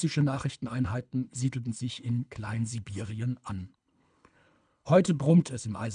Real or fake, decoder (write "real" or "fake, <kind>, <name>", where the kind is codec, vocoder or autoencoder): fake, codec, HILCodec